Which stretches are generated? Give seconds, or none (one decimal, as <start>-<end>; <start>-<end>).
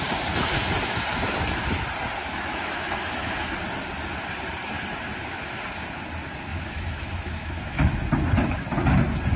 2.2-3.5; 6.5-7.9